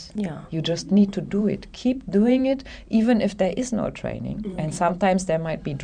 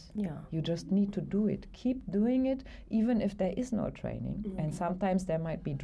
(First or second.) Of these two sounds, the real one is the second